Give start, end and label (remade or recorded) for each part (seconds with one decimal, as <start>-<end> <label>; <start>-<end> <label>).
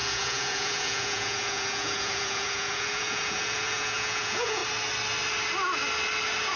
0.0-4.6 remade; 4.6-6.6 recorded